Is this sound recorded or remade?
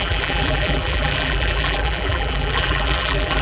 remade